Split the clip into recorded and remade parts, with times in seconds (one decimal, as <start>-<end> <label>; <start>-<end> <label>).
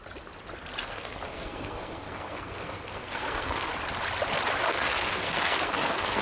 0.0-0.8 recorded; 0.8-3.7 remade; 3.7-4.7 recorded; 4.7-6.2 remade